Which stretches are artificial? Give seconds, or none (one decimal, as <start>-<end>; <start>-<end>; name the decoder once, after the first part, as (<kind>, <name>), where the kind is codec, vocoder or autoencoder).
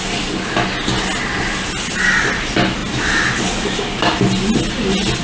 none